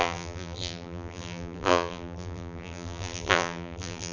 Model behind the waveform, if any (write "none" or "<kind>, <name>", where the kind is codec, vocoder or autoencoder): vocoder, BigVGAN v2